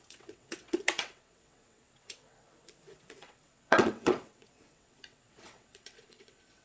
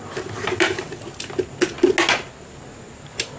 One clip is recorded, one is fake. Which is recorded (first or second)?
second